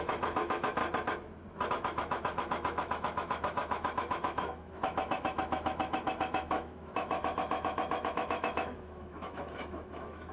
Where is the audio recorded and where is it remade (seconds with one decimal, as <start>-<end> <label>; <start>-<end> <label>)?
0.0-0.8 remade; 0.8-1.7 recorded; 1.7-10.3 remade